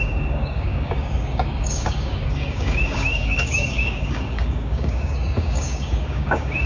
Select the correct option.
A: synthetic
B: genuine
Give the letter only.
A